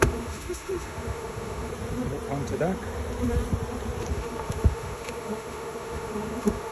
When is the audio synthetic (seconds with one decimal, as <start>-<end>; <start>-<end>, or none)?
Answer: 0.0-1.7; 4.1-6.7